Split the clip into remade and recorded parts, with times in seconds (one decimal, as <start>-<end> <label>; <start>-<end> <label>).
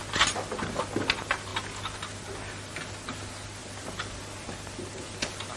0.0-5.6 recorded